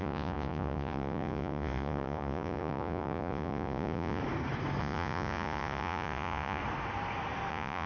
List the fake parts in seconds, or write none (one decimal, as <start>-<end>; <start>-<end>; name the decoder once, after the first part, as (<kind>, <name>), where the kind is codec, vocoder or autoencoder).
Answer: 0.0-4.2 (vocoder, Vocos); 4.8-6.6; 7.5-7.9